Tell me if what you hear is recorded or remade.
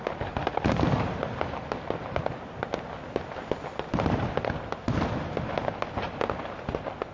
recorded